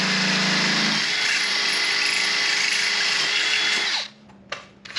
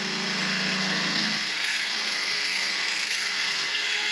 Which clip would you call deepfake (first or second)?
second